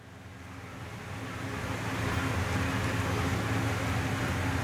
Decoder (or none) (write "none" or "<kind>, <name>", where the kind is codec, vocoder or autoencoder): none